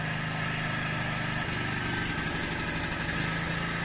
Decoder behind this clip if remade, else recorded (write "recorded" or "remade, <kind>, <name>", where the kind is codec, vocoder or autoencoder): recorded